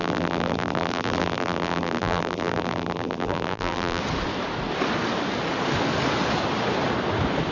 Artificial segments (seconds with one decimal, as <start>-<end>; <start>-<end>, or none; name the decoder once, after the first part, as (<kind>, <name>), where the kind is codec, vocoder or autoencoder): 0.0-4.0 (vocoder, BigVGAN v2)